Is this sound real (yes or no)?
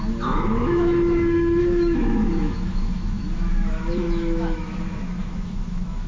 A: no